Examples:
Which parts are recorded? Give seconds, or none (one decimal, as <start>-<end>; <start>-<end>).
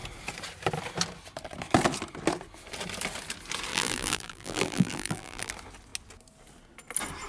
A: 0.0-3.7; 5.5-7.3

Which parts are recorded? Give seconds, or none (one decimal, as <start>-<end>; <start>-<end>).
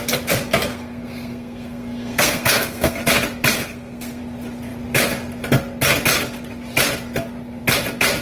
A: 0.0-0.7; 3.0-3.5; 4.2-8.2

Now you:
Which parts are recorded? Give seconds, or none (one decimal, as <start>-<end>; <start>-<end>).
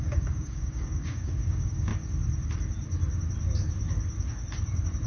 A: 1.9-5.1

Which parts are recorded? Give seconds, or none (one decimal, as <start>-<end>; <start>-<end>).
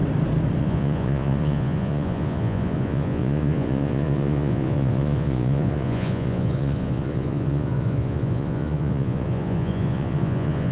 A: 0.0-0.6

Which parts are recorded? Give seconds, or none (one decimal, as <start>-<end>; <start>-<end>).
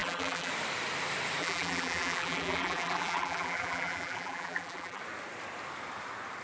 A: 0.5-1.4; 5.0-6.4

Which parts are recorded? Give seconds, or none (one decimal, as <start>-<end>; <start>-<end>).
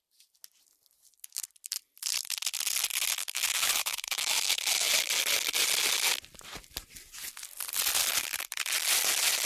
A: 0.0-3.2; 4.9-9.5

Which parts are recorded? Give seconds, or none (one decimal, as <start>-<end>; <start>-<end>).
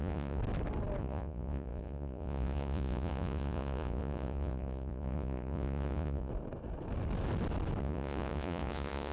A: 0.4-1.0; 6.3-7.8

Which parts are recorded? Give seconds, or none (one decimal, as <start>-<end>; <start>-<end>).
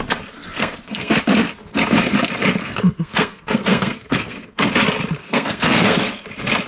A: 0.0-0.4; 1.1-2.6; 4.7-5.2; 6.0-6.7